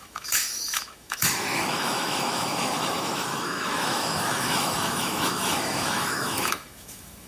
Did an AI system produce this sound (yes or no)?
yes